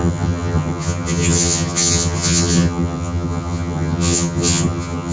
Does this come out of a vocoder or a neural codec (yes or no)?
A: yes